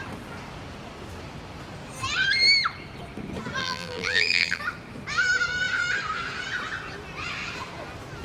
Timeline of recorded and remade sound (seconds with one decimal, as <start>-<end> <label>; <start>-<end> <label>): 0.0-3.6 recorded; 3.6-4.6 remade; 4.6-8.2 recorded